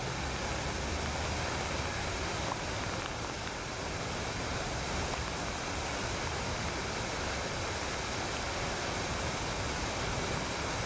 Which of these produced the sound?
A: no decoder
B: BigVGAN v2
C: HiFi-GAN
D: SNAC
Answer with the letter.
A